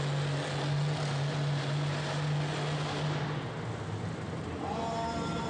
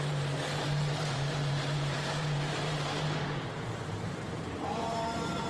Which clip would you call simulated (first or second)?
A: second